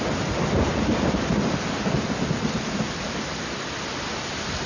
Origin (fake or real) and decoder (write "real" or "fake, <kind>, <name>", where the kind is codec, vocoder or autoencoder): real